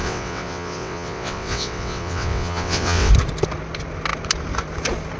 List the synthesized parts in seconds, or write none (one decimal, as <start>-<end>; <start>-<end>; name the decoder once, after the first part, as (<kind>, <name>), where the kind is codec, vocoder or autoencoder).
0.0-3.1 (vocoder, WaveNeXt)